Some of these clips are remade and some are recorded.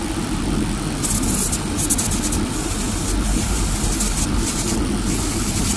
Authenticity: recorded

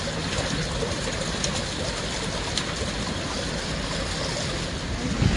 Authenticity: recorded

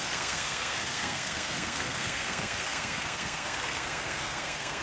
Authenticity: remade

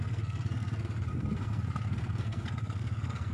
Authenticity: remade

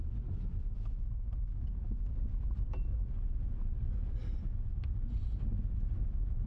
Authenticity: recorded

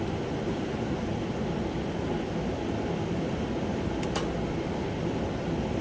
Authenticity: recorded